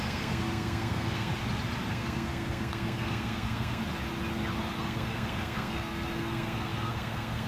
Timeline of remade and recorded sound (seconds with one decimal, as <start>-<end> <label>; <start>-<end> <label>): 0.0-1.3 remade; 1.3-1.9 recorded; 1.9-3.8 remade; 3.8-4.8 recorded; 4.8-7.5 remade